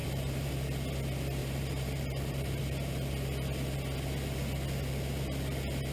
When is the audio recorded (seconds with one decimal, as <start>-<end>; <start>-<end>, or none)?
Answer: 0.5-1.4; 2.6-5.9

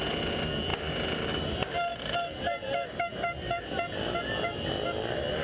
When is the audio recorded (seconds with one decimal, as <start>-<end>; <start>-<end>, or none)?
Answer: 0.0-5.4

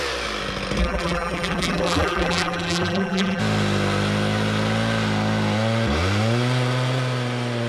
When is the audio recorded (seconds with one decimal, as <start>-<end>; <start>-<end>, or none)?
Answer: 0.0-0.8; 3.4-7.7

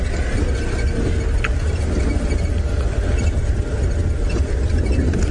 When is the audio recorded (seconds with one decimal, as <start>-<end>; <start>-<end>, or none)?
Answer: 0.0-3.1; 4.7-5.3

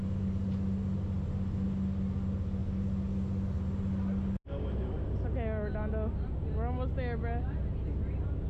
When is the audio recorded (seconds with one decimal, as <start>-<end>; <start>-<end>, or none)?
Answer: 0.0-8.5